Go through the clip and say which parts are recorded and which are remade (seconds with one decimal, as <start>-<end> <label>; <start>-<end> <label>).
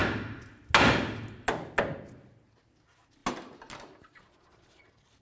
0.0-5.2 recorded